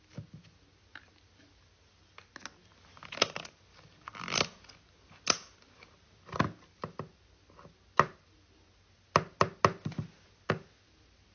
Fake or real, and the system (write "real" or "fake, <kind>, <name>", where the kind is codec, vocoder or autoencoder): real